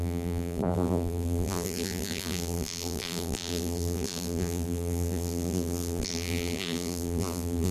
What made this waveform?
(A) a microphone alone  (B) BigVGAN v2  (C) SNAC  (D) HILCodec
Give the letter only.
B